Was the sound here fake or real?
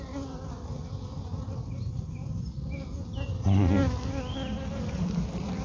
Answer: real